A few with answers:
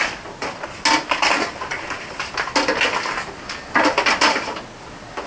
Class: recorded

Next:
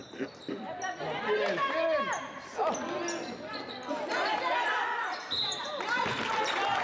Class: recorded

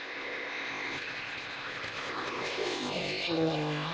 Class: remade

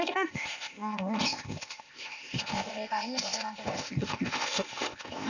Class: remade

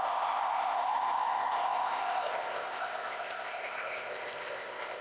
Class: remade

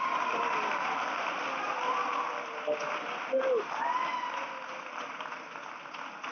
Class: recorded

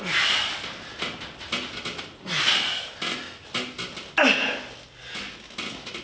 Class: recorded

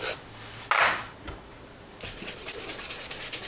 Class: recorded